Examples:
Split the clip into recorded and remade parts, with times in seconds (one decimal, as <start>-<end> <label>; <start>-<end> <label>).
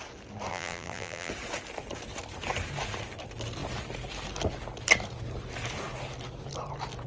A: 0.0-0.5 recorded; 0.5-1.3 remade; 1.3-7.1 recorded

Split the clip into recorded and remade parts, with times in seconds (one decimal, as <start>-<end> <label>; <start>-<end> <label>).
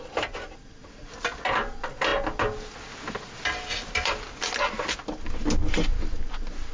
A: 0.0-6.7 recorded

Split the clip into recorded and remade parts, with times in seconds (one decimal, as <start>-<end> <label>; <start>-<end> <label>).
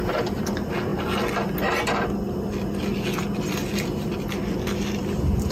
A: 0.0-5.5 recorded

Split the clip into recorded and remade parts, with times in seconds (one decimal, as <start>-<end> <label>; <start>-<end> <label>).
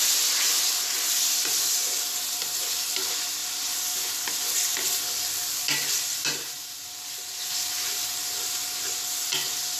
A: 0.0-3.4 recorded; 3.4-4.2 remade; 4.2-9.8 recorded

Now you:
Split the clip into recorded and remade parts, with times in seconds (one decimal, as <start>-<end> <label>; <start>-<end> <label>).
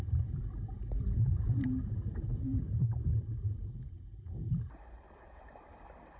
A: 0.0-0.4 remade; 0.4-1.0 recorded; 1.0-6.2 remade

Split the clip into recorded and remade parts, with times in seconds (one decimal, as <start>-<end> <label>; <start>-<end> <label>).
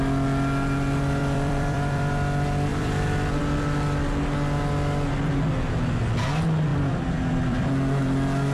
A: 0.0-1.2 recorded; 1.2-2.1 remade; 2.1-2.7 recorded; 2.7-3.4 remade; 3.4-6.7 recorded; 6.7-7.7 remade; 7.7-8.5 recorded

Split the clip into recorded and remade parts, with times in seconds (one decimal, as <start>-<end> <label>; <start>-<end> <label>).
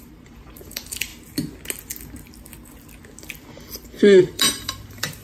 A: 0.0-1.1 remade; 1.1-4.2 recorded; 4.2-5.2 remade